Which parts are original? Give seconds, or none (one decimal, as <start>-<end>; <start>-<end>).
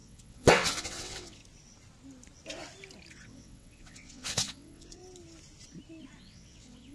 1.4-3.1; 5.0-6.2